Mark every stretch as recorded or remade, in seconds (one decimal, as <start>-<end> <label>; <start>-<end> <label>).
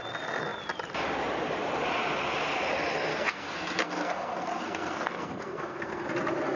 0.0-3.1 recorded; 3.1-6.0 remade; 6.0-6.6 recorded